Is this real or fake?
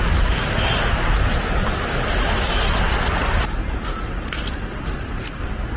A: real